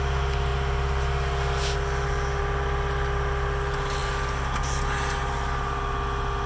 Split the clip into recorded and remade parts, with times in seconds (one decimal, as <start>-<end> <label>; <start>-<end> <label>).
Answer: 0.0-6.5 recorded